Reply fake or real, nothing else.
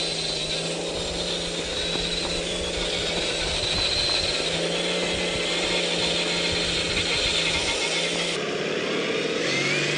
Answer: real